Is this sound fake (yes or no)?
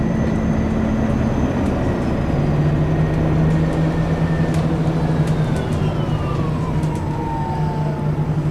no